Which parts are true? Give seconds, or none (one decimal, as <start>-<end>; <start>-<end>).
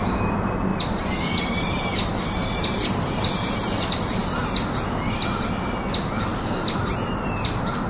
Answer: 0.0-0.7; 3.8-6.3; 7.1-7.9